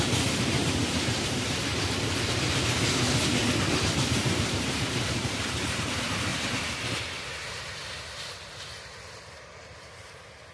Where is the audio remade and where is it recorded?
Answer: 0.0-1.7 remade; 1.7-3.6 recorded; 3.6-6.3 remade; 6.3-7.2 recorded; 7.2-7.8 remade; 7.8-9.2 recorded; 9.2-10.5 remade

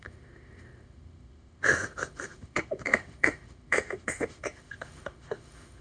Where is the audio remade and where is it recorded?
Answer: 0.0-5.8 remade